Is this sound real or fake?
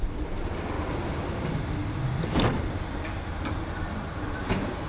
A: real